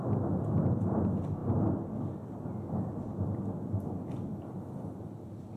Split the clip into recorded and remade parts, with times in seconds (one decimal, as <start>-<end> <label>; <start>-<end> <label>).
0.0-5.6 recorded